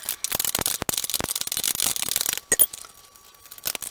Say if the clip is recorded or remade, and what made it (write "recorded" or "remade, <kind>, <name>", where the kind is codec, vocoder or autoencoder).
recorded